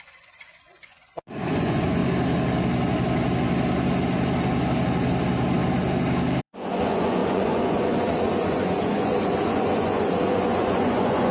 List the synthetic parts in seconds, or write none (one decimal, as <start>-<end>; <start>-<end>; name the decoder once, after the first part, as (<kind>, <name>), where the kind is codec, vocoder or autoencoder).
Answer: 0.0-2.0 (vocoder, Vocos); 6.4-11.3